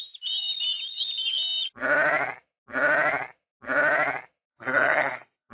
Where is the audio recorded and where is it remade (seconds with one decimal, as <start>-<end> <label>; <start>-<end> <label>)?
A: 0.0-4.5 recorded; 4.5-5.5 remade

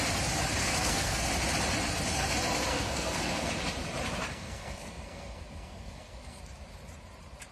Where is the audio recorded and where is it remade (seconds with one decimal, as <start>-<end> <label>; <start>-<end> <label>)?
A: 0.0-0.6 recorded; 0.6-1.3 remade; 1.3-2.7 recorded; 2.7-3.5 remade; 3.5-4.3 recorded; 4.3-6.4 remade; 6.4-7.5 recorded

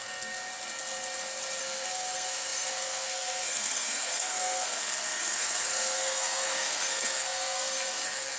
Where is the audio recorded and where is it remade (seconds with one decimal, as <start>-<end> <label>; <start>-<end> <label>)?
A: 0.0-0.5 remade; 0.5-1.6 recorded; 1.6-8.4 remade

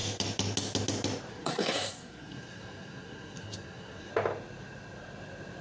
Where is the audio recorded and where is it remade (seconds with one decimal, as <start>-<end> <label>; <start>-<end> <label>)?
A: 0.0-1.3 recorded; 1.3-4.1 remade; 4.1-5.6 recorded